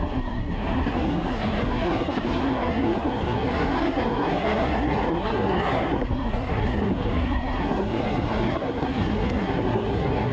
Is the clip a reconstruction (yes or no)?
yes